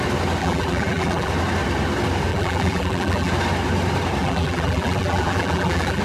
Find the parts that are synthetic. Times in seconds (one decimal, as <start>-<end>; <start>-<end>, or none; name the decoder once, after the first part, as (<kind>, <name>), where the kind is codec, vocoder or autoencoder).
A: 0.4-1.3 (vocoder, BigVGAN v2); 2.3-3.3; 4.2-6.0